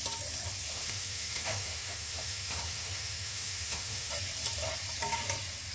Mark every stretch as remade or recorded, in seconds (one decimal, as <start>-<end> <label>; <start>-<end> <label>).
0.0-0.7 recorded; 0.7-4.1 remade; 4.1-5.7 recorded